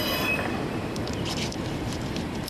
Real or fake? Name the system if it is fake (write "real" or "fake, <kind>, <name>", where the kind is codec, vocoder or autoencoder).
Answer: fake, vocoder, BigVGAN v2